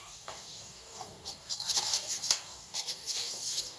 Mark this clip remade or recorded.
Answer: remade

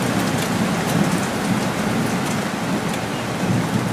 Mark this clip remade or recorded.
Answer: recorded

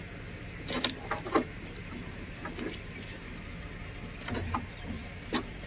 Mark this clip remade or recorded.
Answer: recorded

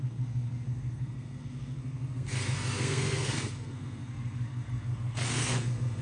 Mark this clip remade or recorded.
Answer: remade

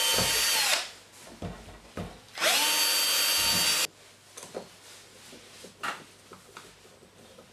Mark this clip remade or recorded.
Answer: recorded